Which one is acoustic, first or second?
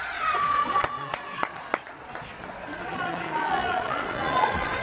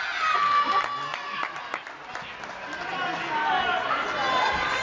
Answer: second